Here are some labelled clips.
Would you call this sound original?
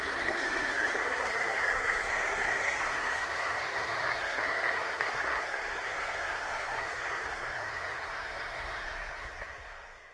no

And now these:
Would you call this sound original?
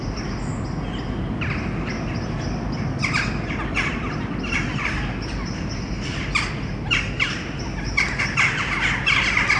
yes